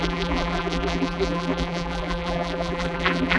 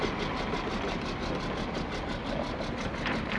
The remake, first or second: first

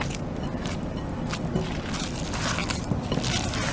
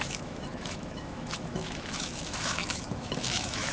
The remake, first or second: second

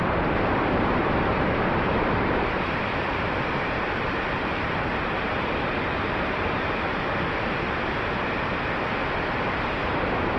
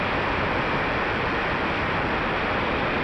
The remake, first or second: first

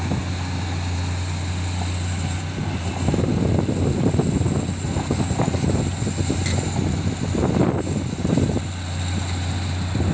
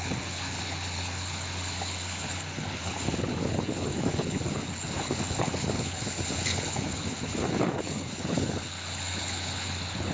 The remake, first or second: second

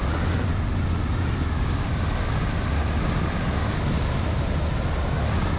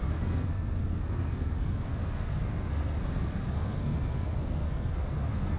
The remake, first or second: second